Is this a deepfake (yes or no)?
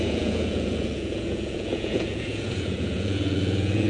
yes